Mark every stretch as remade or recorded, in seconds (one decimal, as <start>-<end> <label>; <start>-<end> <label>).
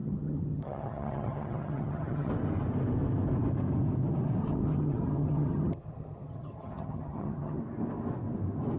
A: 0.0-2.3 remade; 2.3-4.4 recorded; 4.4-7.6 remade; 7.6-8.8 recorded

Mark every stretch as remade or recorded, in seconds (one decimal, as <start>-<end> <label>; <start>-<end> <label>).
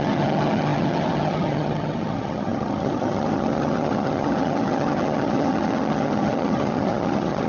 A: 0.0-7.5 remade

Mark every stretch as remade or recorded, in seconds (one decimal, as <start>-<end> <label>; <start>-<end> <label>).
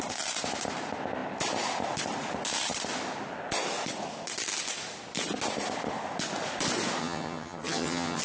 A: 0.0-7.0 recorded; 7.0-8.2 remade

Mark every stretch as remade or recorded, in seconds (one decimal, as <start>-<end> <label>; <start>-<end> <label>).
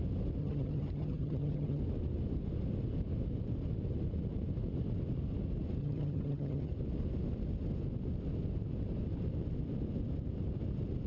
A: 0.0-0.4 recorded; 0.4-1.8 remade; 1.8-5.8 recorded; 5.8-6.7 remade; 6.7-11.1 recorded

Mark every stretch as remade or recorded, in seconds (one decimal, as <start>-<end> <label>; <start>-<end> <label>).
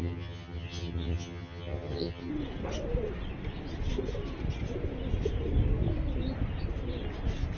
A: 0.0-2.3 remade; 2.3-7.6 recorded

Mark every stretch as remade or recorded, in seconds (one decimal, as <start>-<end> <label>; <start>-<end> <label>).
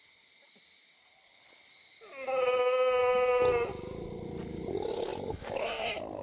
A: 0.0-6.2 recorded